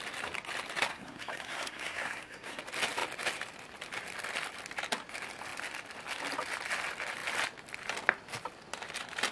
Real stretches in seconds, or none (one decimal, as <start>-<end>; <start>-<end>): 0.0-0.9; 2.6-9.3